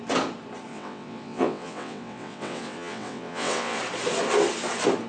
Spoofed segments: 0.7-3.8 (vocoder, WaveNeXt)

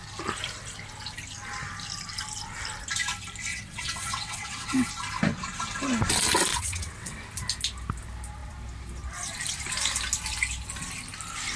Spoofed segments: 3.5-4.9 (vocoder, WaveNeXt); 6.5-7.2

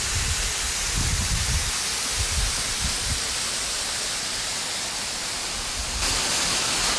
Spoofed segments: none

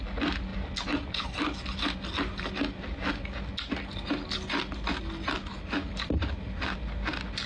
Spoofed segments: none

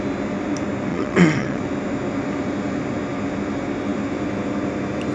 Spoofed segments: 0.9-1.6 (vocoder, WaveNeXt)

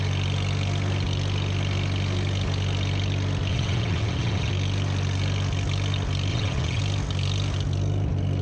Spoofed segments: 3.5-4.5 (vocoder, WaveNeXt); 6.3-6.8

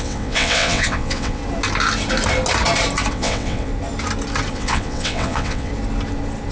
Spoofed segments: 0.0-1.4 (vocoder, WaveNeXt); 3.1-3.7; 4.5-5.7

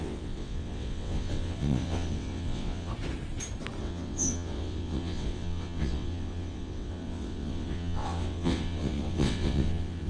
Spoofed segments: 0.0-2.9 (vocoder, WaveNeXt); 3.8-10.1